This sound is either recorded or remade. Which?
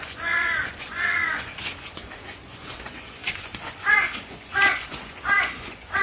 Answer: remade